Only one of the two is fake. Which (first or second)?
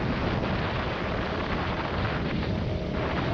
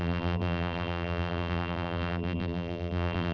second